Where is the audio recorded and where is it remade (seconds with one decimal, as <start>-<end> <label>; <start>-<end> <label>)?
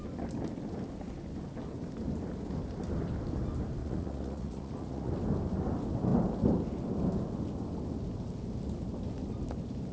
0.0-3.8 recorded; 3.8-5.1 remade; 5.1-9.9 recorded